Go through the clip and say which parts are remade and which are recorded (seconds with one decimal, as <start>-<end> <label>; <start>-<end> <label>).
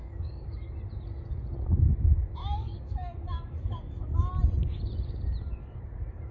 0.0-0.7 remade; 0.7-2.4 recorded; 2.4-4.3 remade; 4.3-6.3 recorded